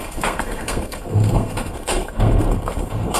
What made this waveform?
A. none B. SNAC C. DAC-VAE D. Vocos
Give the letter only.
B